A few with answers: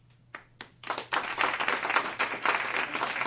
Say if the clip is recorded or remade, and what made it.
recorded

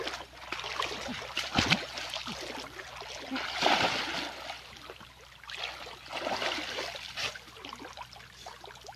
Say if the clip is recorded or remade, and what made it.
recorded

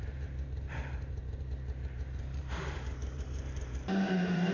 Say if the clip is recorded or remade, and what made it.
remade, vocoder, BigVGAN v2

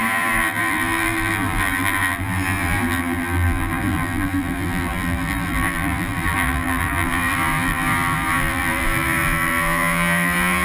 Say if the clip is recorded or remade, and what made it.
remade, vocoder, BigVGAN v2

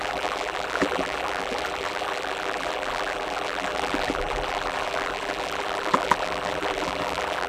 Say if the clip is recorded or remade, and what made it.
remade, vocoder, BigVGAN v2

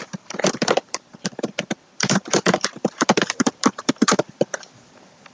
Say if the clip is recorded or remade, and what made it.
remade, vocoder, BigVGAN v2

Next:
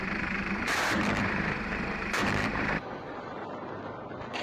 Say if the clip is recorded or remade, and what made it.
remade, vocoder, BigVGAN v2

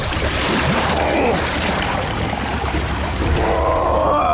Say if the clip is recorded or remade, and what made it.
remade, vocoder, BigVGAN v2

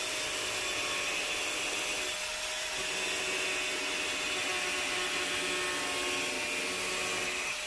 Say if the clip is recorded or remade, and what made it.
recorded